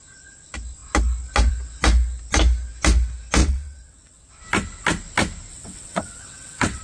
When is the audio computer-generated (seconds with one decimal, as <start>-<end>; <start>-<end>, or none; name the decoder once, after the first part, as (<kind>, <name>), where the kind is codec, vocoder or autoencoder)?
3.4-4.3 (vocoder, WaveNeXt); 5.5-6.8